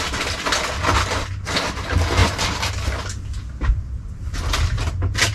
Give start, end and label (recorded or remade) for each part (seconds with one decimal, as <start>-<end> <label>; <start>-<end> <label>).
0.0-5.3 recorded